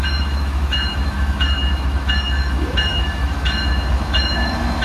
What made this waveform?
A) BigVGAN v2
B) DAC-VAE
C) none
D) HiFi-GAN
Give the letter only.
B